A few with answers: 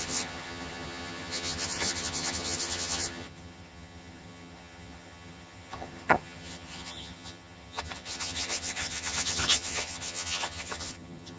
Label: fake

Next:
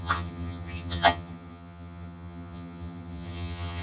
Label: fake